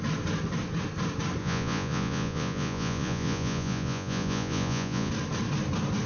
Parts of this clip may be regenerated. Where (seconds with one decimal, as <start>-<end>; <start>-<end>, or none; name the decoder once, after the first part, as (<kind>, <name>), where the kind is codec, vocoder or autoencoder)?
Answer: 1.4-5.1 (vocoder, Vocos)